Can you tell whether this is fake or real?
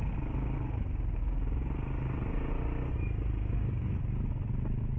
real